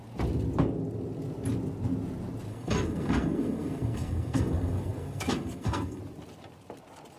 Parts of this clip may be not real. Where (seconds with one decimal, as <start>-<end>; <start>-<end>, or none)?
2.5-6.0